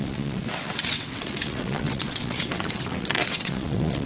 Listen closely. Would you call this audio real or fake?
fake